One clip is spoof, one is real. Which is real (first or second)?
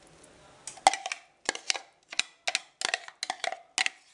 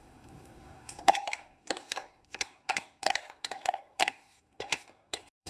first